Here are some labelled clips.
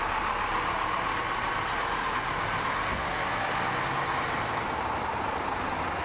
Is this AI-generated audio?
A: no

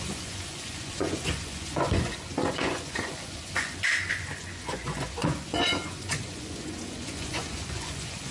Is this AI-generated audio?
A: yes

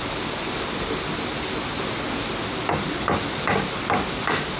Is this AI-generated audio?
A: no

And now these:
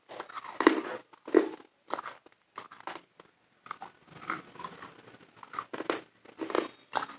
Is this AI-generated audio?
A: no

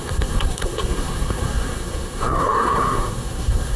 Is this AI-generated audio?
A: yes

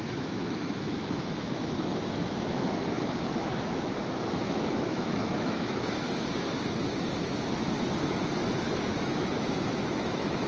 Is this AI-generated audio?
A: yes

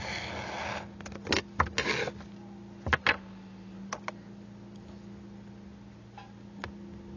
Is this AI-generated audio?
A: no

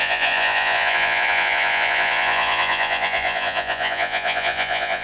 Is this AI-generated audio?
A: yes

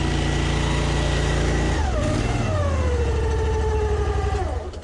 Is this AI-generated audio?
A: no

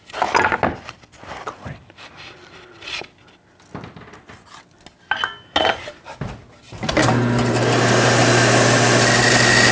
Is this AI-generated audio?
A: no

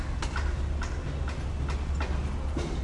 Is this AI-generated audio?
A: no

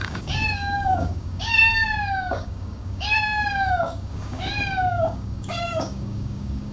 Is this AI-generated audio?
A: yes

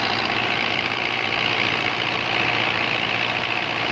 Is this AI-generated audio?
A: no